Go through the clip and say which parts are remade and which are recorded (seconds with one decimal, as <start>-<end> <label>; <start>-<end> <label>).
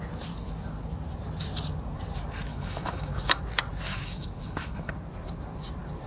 0.0-2.5 recorded; 2.5-3.4 remade; 3.4-3.9 recorded; 3.9-4.9 remade; 4.9-6.1 recorded